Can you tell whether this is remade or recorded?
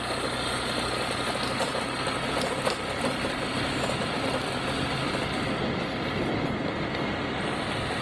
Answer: recorded